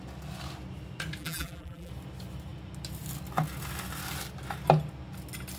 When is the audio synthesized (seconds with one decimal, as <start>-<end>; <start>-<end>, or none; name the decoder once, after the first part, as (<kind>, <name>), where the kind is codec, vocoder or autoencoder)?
1.2-1.9 (vocoder, BigVGAN v2)

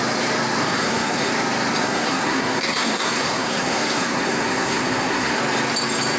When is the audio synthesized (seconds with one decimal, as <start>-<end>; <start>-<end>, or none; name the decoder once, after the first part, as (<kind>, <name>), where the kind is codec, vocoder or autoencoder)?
0.6-1.3 (codec, SNAC); 1.8-5.4